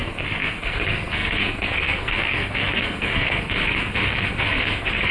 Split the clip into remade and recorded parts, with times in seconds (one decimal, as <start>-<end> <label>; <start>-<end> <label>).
0.0-5.1 remade